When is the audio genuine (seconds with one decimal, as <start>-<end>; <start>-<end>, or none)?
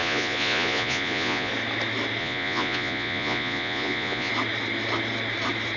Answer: 1.5-2.2; 4.3-5.8